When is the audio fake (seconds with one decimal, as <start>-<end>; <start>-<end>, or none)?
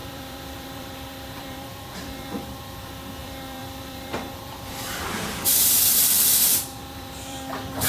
0.0-7.9